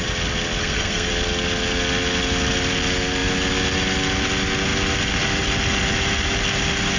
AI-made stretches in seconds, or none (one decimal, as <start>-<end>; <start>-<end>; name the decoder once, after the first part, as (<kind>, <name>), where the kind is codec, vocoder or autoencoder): 0.6-1.1 (codec, SNAC)